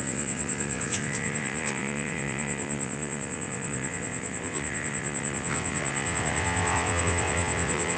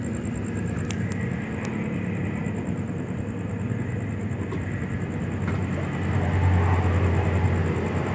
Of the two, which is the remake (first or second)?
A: first